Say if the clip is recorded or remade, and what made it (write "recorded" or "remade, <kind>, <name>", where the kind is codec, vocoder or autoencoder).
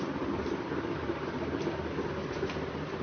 recorded